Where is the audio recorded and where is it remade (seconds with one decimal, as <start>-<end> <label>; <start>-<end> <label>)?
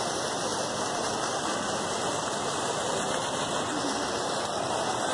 0.0-5.1 recorded